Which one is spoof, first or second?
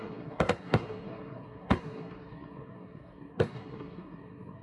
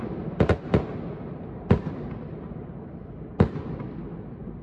first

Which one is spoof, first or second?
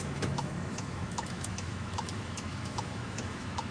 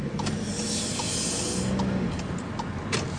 first